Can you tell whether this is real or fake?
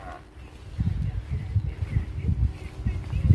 real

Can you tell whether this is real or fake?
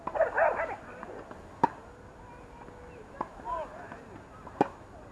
real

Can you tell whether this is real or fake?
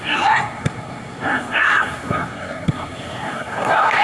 fake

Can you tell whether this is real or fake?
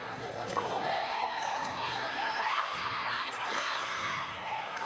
fake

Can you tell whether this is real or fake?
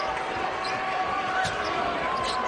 real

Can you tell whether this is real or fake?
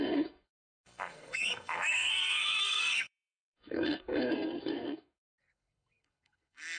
fake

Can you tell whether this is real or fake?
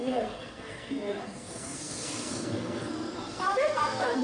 fake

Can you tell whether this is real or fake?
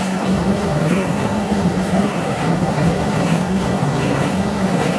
fake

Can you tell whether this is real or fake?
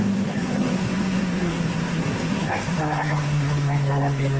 fake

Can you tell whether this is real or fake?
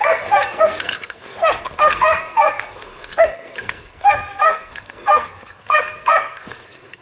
fake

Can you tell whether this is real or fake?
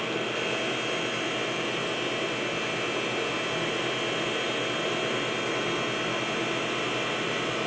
real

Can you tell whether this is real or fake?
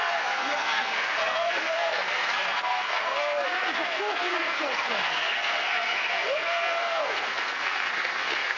fake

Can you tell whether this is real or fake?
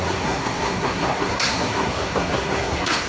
fake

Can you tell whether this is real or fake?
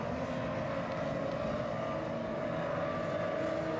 real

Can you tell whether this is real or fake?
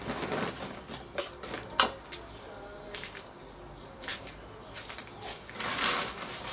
real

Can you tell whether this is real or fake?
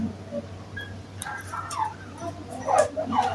real